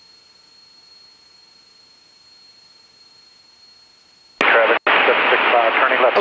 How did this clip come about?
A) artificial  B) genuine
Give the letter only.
B